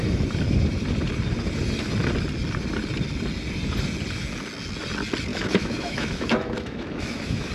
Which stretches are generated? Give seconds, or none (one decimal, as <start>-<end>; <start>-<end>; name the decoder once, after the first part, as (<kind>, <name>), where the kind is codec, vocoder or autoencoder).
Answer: 5.3-7.5 (autoencoder, DAC-VAE)